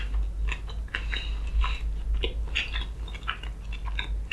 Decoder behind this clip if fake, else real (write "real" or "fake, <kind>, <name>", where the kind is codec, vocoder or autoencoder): real